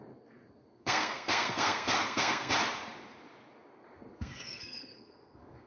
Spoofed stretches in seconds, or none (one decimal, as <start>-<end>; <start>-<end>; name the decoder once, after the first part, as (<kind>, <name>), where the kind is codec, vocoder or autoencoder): 0.7-2.5 (codec, SNAC); 4.1-5.7